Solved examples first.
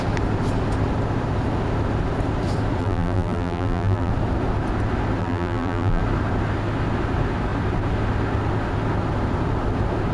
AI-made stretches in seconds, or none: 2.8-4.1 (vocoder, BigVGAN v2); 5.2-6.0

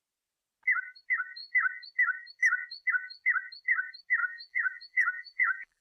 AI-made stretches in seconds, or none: 4.2-5.8 (vocoder, BigVGAN v2)